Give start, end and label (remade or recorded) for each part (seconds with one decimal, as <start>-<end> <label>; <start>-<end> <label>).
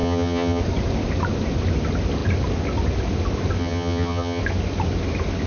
0.0-0.6 remade; 0.6-3.6 recorded; 3.6-4.4 remade; 4.4-5.5 recorded